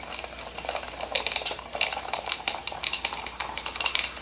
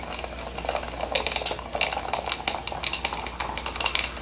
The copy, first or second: first